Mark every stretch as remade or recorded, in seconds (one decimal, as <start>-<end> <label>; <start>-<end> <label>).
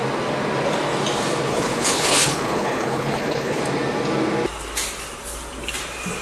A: 0.0-1.5 recorded; 1.5-3.6 remade; 3.6-6.2 recorded